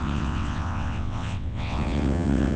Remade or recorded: remade